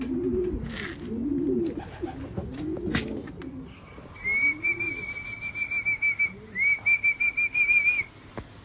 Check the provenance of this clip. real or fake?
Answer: real